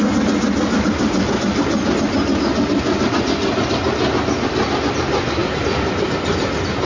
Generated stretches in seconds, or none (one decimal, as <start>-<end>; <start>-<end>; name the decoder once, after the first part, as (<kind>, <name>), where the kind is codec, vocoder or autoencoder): none